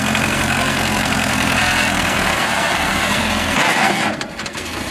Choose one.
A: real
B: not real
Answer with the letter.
B